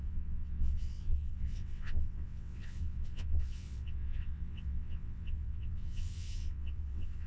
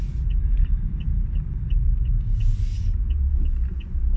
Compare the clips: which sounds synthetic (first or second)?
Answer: first